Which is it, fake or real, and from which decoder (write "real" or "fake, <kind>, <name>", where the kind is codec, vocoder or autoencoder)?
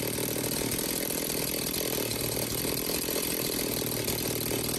real